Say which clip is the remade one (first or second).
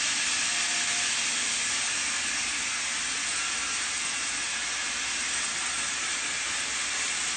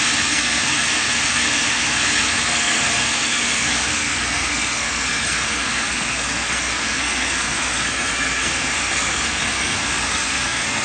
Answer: second